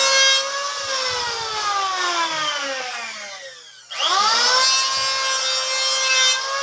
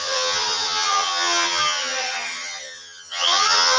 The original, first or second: first